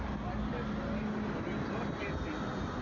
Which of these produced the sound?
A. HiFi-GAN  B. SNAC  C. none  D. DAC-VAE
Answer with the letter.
C